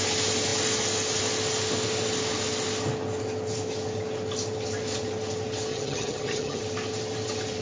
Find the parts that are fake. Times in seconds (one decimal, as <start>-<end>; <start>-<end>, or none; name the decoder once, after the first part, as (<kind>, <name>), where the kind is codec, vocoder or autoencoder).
5.7-6.6 (vocoder, HiFi-GAN)